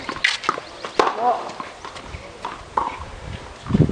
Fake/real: real